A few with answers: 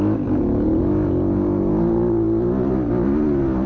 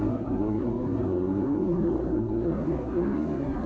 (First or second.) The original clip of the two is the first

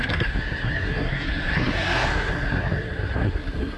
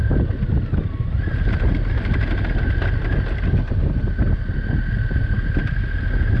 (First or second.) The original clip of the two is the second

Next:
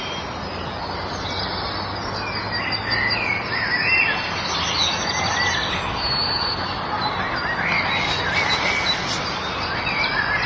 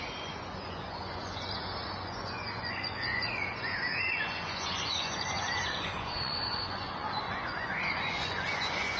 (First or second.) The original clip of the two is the first